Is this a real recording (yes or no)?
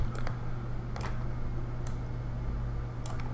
yes